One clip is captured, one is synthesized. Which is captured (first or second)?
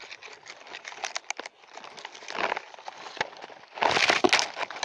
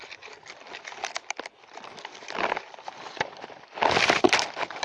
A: first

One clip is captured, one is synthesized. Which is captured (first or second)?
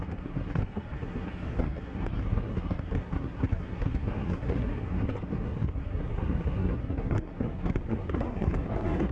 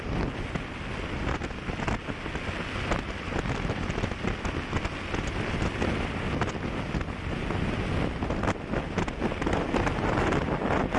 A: second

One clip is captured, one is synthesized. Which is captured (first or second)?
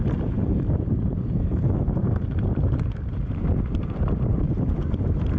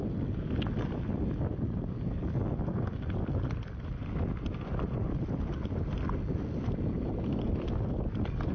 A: second